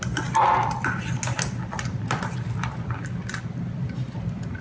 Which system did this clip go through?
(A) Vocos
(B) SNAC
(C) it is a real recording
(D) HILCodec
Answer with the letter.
C